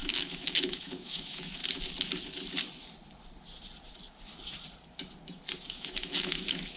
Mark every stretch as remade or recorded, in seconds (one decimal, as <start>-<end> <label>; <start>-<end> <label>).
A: 0.0-1.6 remade; 1.6-5.7 recorded; 5.7-6.8 remade

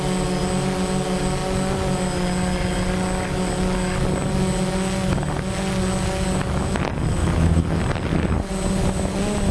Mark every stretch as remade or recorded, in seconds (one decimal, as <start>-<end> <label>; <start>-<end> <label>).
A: 0.0-7.2 recorded; 7.2-7.8 remade; 7.8-9.5 recorded

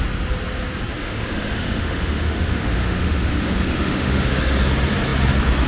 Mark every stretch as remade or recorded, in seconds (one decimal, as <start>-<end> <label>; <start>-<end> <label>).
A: 0.0-1.0 recorded; 1.0-4.4 remade; 4.4-5.7 recorded

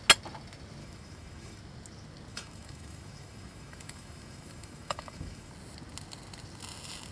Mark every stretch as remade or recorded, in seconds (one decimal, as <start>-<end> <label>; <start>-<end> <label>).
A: 0.0-0.8 recorded; 0.8-1.6 remade; 1.6-2.3 recorded; 2.3-5.5 remade; 5.5-7.1 recorded